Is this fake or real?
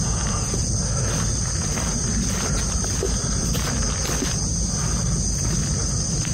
real